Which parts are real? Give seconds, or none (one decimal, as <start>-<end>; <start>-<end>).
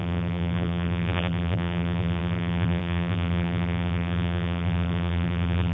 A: none